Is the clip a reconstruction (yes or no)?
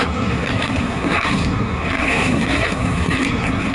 yes